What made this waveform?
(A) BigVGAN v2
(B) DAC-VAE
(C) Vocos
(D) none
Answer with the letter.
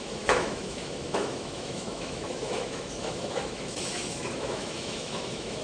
B